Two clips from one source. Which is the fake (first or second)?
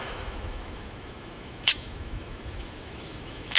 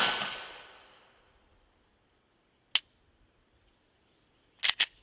first